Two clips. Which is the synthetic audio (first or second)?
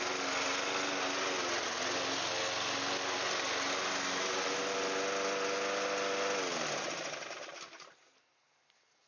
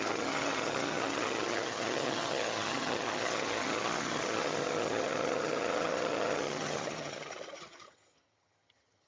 second